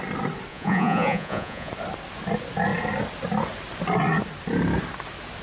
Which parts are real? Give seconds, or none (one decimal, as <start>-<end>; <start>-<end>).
0.0-0.5; 1.7-5.4